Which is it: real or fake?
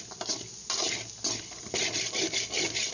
real